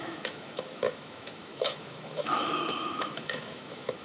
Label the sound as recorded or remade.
remade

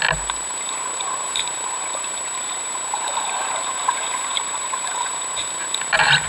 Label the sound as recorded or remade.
recorded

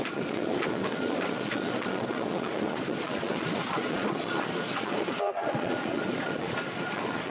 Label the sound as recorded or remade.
remade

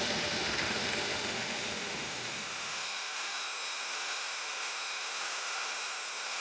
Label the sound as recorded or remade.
remade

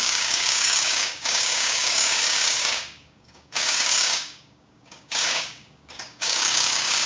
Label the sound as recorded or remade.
remade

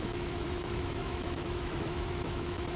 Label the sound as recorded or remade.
remade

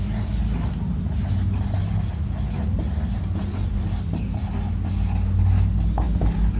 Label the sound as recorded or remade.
recorded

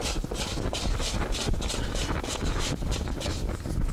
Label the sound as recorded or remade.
remade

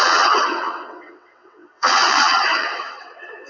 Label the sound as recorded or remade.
remade